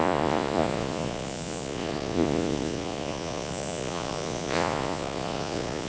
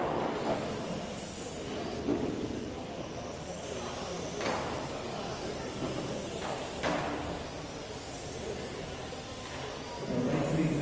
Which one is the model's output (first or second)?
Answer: first